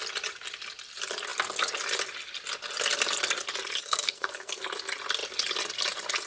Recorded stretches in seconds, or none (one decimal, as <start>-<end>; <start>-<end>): 0.0-3.8; 4.6-6.3

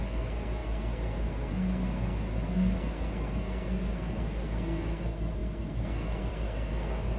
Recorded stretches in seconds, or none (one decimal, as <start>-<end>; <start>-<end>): none